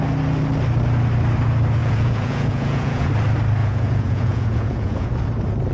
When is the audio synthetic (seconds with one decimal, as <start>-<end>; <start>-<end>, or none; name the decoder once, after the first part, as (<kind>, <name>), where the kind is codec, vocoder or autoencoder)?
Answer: 1.8-3.1 (vocoder, Vocos); 3.6-5.1